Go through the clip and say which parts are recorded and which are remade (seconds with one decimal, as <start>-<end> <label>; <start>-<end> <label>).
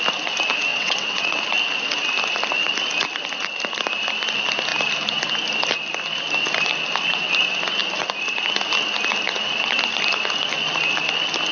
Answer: 0.0-0.7 recorded; 0.7-1.4 remade; 1.4-11.5 recorded